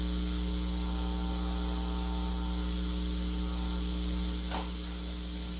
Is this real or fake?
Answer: real